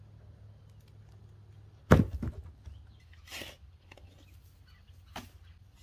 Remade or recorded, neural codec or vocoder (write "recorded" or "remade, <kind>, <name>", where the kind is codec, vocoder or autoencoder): recorded